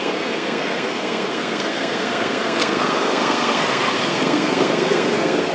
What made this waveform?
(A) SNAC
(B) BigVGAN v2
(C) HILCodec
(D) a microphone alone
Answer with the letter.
A